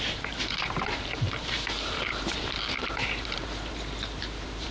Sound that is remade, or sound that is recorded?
remade